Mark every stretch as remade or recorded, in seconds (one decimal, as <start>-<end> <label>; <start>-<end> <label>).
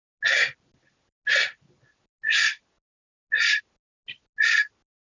0.0-5.2 recorded